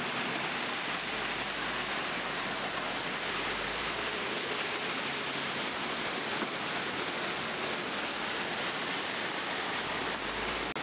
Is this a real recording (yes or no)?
yes